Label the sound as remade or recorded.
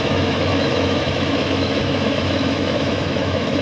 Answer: remade